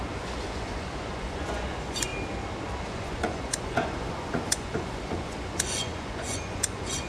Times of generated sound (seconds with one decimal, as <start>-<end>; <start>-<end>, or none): 0.0-2.1; 2.9-7.1